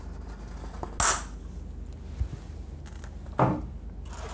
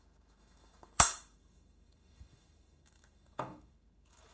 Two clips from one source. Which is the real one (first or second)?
first